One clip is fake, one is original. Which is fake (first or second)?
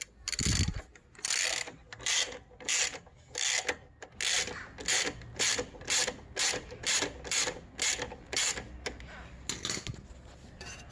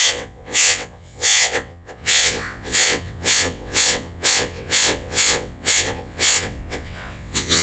second